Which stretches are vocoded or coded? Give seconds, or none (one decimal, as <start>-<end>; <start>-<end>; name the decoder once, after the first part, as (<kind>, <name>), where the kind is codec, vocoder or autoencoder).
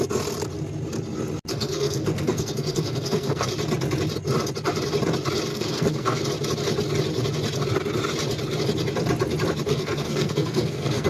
1.5-3.5 (codec, SNAC); 5.5-6.2; 9.7-11.1